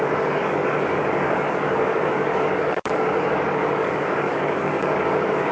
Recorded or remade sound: remade